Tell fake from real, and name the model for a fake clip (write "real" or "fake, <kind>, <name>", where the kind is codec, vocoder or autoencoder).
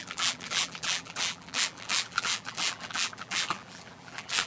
fake, vocoder, BigVGAN v2